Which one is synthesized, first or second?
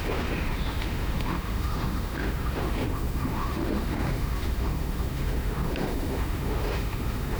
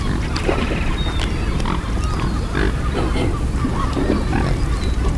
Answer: first